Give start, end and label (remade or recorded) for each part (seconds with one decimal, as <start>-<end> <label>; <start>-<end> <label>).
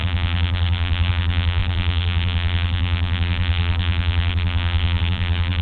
0.0-5.6 remade